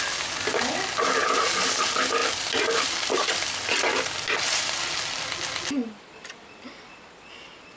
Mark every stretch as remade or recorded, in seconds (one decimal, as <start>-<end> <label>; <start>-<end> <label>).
0.0-2.2 recorded; 2.2-3.3 remade; 3.3-7.8 recorded